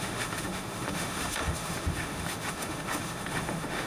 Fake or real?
fake